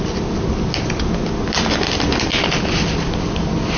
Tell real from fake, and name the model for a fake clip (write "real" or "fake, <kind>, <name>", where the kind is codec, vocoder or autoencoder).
real